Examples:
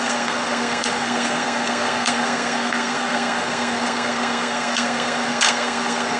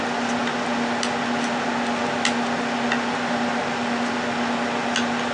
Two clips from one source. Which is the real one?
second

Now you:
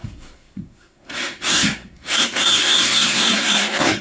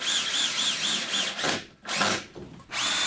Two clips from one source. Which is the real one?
second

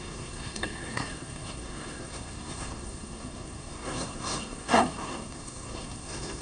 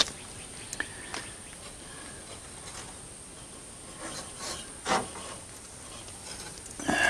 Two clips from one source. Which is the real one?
second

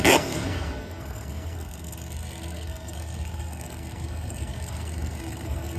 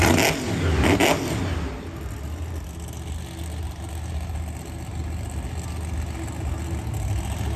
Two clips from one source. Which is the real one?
second